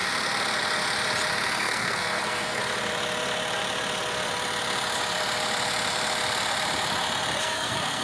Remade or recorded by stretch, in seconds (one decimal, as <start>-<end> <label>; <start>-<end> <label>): 0.0-1.5 recorded; 1.5-2.6 remade; 2.6-7.4 recorded; 7.4-8.0 remade